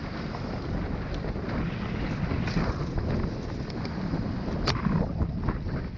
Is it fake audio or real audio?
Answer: real